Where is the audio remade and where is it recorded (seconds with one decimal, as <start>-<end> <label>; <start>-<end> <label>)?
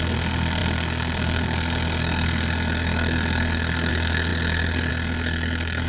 0.0-5.9 remade